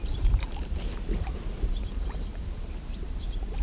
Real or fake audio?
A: fake